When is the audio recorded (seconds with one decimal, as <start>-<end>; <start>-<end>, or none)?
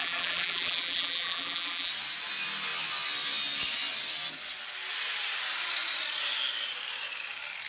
1.9-7.7